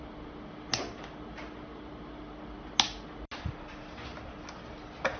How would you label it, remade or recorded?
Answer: recorded